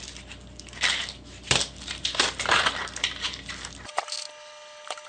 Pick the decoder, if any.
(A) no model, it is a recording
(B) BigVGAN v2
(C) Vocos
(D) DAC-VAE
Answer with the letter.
A